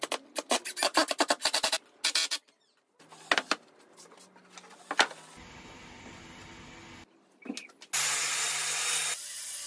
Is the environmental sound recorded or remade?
recorded